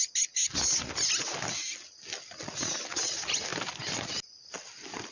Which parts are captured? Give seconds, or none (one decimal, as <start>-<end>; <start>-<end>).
0.0-5.1